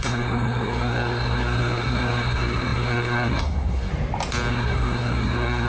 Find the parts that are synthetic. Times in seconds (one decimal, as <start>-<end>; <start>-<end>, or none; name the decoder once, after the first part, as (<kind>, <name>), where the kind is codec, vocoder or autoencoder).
0.0-3.9 (codec, SNAC); 4.5-5.7